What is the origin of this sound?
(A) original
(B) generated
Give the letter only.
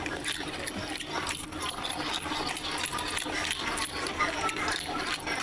B